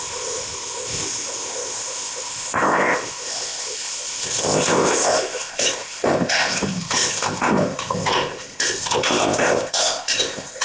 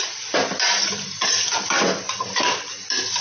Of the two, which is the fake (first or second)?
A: first